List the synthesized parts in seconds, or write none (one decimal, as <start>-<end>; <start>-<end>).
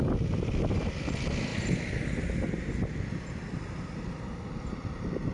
none